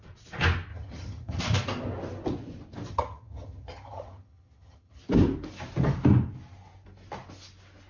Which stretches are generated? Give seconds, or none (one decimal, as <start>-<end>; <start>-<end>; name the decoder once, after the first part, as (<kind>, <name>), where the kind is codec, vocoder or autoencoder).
0.7-1.4 (vocoder, HiFi-GAN); 2.9-5.0